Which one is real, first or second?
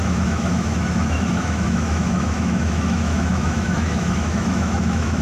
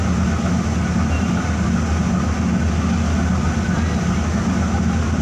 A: second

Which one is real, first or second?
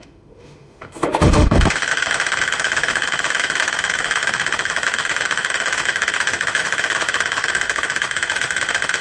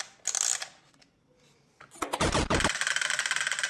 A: second